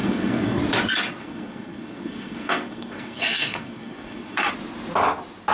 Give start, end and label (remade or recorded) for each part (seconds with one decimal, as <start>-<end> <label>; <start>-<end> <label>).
0.0-0.6 remade; 0.6-1.2 recorded; 1.2-4.5 remade; 4.5-5.5 recorded